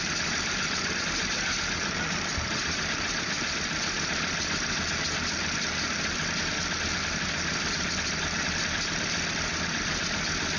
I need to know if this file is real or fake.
real